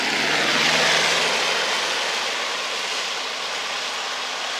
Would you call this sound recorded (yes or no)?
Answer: yes